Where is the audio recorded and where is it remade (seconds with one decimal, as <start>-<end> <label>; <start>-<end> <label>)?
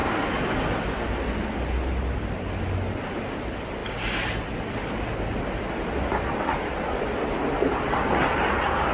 0.0-8.9 recorded